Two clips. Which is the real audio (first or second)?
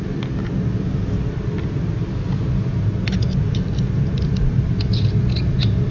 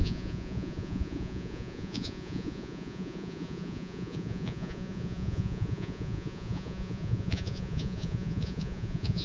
first